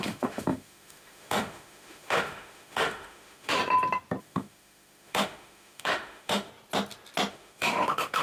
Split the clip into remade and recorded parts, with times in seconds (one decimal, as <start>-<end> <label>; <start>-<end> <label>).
0.0-3.6 remade; 3.6-4.2 recorded; 4.2-6.5 remade; 6.5-7.3 recorded; 7.3-8.2 remade